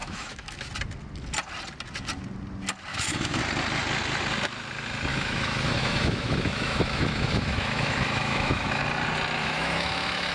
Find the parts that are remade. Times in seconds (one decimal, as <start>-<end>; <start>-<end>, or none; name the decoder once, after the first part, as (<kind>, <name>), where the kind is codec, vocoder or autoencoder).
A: 0.0-0.7 (autoencoder, DAC-VAE); 2.9-3.4; 5.1-8.8; 9.4-10.3